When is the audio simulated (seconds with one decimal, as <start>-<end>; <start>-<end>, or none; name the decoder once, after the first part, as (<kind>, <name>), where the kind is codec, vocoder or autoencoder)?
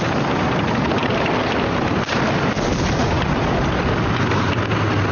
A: none